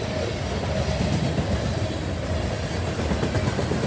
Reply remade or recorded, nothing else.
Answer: recorded